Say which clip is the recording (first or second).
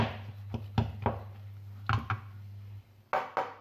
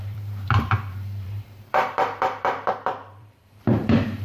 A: first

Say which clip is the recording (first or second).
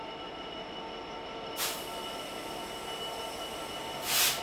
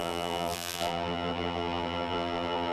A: first